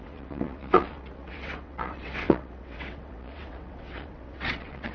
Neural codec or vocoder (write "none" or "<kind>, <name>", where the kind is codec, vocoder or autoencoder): vocoder, WaveNeXt